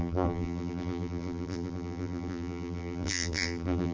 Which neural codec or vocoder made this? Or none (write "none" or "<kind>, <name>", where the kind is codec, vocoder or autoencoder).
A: vocoder, BigVGAN v2